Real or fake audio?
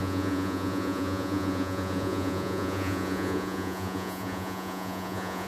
fake